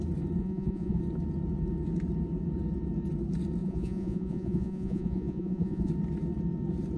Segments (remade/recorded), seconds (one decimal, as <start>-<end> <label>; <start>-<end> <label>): 0.0-0.4 recorded; 0.4-1.0 remade; 1.0-3.6 recorded; 3.6-5.9 remade; 5.9-7.0 recorded